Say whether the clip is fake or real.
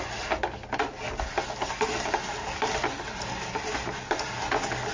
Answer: real